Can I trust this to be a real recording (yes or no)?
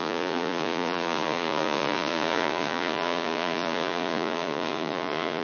no